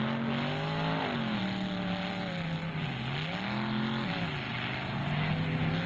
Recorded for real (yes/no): yes